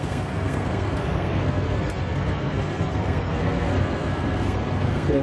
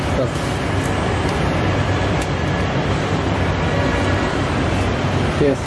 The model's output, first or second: first